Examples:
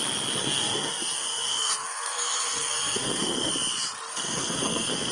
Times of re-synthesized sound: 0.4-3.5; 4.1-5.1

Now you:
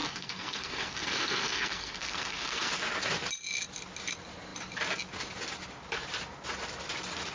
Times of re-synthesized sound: 0.0-2.7

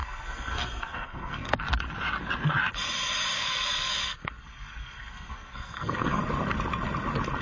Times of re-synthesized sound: 0.0-1.6; 3.4-6.2

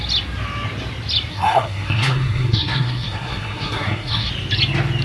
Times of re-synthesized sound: 1.3-4.3

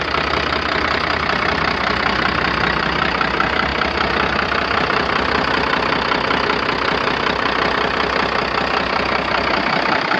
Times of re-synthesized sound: none